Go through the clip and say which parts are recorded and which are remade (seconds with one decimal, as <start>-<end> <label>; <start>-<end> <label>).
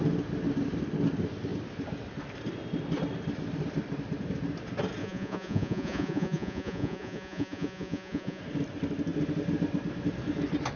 0.0-5.0 recorded; 5.0-8.4 remade; 8.4-10.8 recorded